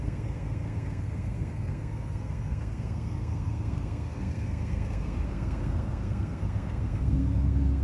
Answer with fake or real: fake